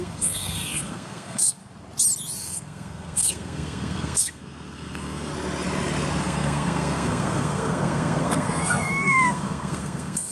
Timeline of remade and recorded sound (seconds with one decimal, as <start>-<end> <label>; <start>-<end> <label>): 0.0-1.6 remade; 1.6-2.4 recorded; 2.4-5.3 remade; 5.3-6.2 recorded; 6.2-10.3 remade